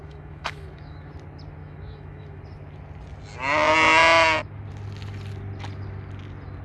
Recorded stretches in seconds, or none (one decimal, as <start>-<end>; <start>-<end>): 1.1-1.6; 2.4-6.6